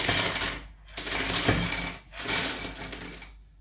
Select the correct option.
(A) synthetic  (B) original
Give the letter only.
B